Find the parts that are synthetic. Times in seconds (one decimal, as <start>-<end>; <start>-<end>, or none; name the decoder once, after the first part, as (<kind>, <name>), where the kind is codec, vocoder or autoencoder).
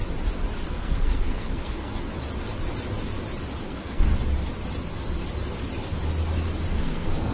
0.7-2.1 (codec, SNAC); 3.6-4.1; 6.7-7.3